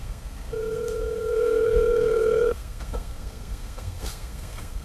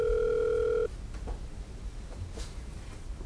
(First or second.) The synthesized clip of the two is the first